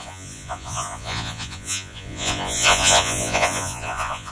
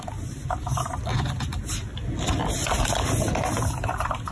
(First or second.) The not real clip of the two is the first